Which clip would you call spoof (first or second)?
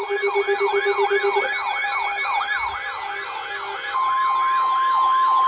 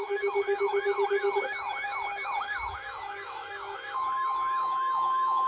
second